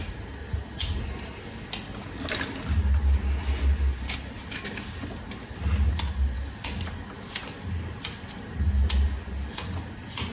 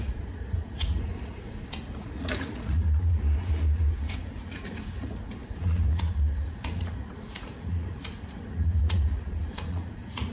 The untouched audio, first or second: first